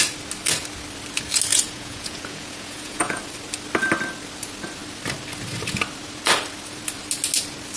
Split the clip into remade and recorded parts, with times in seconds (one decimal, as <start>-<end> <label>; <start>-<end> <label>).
0.0-1.5 recorded; 1.5-3.2 remade; 3.2-7.8 recorded